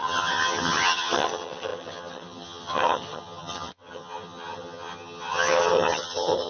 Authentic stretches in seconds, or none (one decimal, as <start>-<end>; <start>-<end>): none